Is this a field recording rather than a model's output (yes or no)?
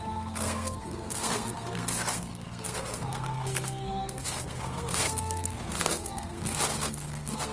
no